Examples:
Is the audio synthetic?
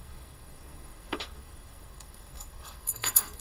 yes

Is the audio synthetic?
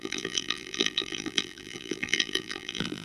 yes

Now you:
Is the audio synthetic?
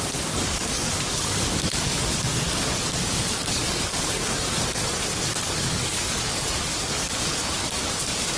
yes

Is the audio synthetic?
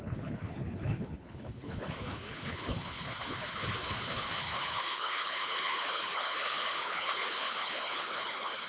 yes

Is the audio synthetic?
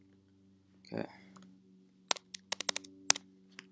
no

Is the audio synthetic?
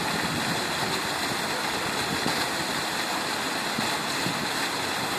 no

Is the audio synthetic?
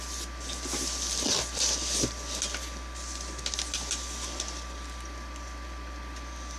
no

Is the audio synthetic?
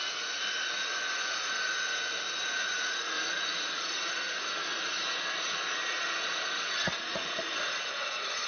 yes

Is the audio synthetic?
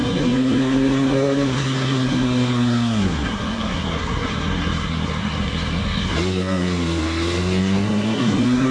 yes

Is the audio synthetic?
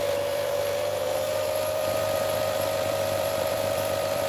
yes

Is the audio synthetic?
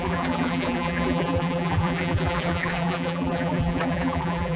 yes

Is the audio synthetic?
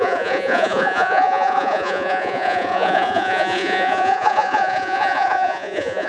yes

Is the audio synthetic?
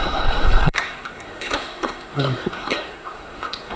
yes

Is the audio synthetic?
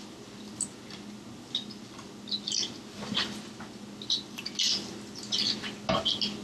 no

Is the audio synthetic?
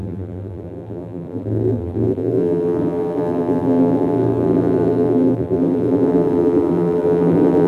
yes